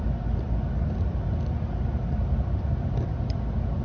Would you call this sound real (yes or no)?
yes